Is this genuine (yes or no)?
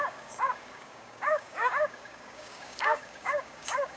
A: no